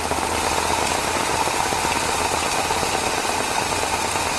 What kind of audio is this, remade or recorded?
recorded